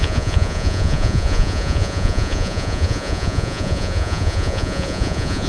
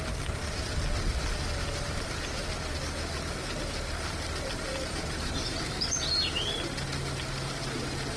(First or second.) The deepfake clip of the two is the first